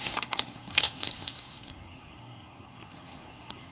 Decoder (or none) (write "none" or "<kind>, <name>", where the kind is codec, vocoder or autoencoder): codec, SNAC